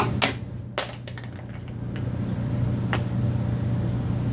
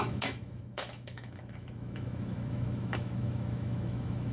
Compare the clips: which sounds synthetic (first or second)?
second